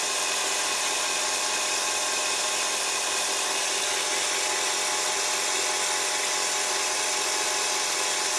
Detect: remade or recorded recorded